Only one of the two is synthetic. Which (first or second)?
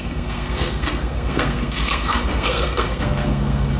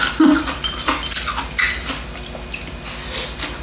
first